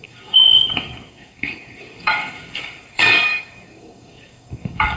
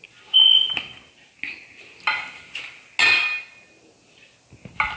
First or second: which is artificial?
first